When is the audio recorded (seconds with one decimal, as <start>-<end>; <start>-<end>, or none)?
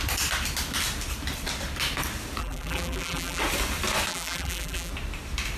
0.0-2.4; 3.4-4.1; 4.9-5.6